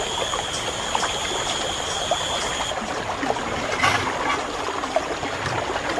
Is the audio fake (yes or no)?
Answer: no